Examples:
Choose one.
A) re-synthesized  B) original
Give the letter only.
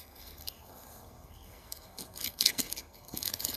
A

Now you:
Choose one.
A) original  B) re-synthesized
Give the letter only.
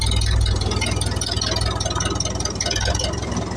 A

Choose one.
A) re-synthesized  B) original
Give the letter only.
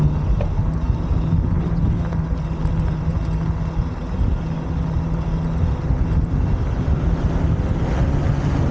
B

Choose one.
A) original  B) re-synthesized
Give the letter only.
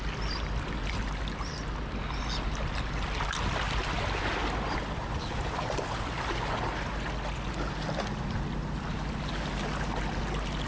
A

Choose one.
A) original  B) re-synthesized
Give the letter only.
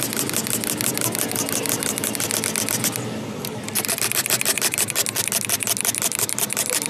A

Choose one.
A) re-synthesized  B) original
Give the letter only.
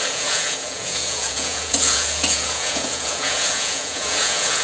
A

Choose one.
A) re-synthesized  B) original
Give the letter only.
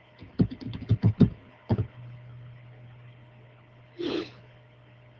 A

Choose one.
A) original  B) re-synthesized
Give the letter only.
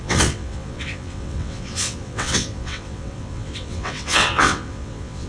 B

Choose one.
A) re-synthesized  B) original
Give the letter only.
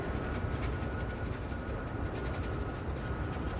B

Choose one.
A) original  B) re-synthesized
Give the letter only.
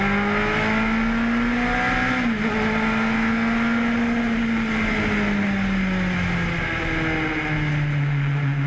A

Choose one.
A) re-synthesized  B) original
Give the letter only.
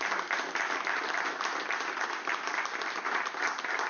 B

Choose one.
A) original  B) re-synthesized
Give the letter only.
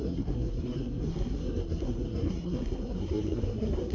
B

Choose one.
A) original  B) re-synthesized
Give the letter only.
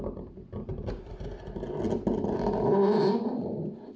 A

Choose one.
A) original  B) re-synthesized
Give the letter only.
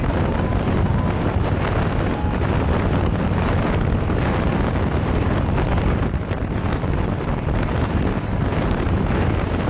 A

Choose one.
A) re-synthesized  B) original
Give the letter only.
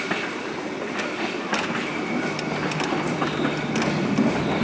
B